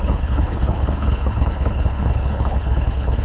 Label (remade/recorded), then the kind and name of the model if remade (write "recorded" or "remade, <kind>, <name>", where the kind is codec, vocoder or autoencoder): remade, codec, HILCodec